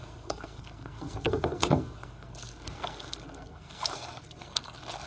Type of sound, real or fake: fake